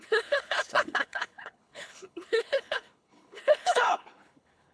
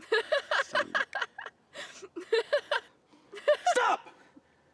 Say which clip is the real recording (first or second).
second